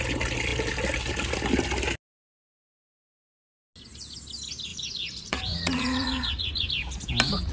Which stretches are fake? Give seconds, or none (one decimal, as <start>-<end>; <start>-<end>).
4.7-6.7